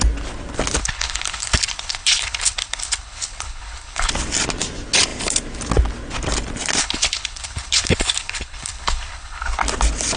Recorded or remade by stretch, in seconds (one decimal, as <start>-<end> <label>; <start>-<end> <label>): 0.0-0.8 recorded; 0.8-4.1 remade; 4.1-6.8 recorded; 6.8-9.6 remade; 9.6-10.2 recorded